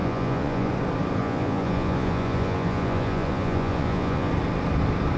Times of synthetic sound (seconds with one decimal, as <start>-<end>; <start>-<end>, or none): 0.0-0.7; 1.2-4.3